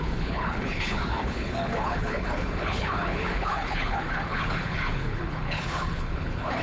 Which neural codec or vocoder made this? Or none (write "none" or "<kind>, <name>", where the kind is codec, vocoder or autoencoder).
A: codec, HILCodec